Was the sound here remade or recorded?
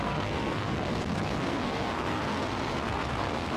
remade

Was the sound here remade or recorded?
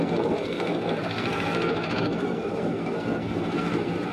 remade